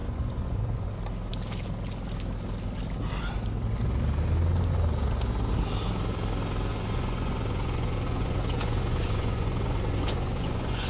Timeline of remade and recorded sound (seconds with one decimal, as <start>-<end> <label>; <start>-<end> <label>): 0.0-0.9 remade; 0.9-6.7 recorded; 6.7-10.9 remade